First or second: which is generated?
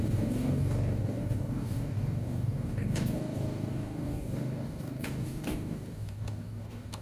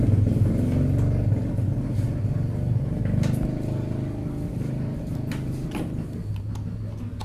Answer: first